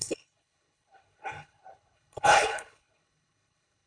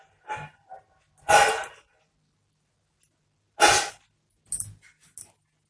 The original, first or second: second